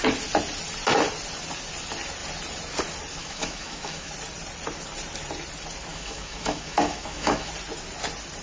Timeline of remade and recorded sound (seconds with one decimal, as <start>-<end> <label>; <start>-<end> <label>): 0.0-3.2 recorded; 3.2-4.1 remade; 4.1-5.9 recorded; 5.9-7.5 remade; 7.5-8.4 recorded